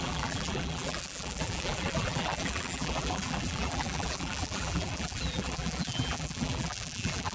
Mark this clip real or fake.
fake